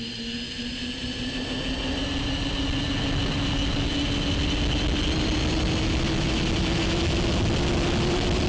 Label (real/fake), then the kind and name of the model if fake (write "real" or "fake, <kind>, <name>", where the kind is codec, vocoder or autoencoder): real